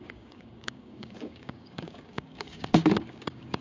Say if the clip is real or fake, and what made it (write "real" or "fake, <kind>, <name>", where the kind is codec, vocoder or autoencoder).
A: fake, codec, DAC